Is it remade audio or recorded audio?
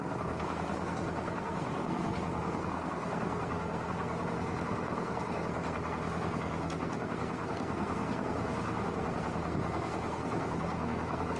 remade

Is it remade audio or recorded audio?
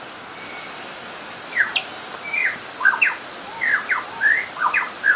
recorded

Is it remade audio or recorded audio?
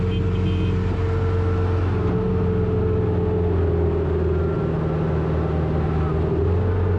recorded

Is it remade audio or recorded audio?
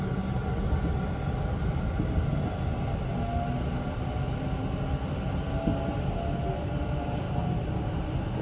recorded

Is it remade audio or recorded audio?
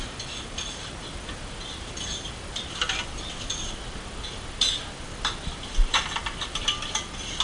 recorded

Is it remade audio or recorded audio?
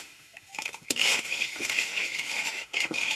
remade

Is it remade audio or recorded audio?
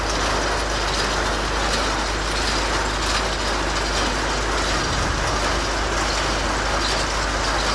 recorded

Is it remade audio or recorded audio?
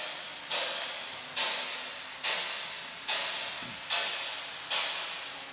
recorded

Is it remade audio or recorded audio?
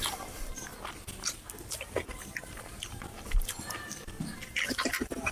recorded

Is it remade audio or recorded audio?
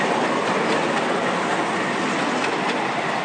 recorded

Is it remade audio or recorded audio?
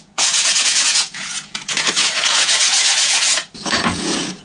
remade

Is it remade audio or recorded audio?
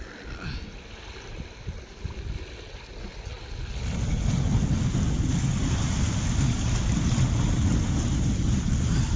recorded